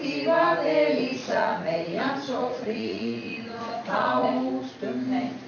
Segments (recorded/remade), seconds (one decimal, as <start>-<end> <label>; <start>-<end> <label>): 0.0-1.2 recorded; 1.2-4.5 remade; 4.5-5.5 recorded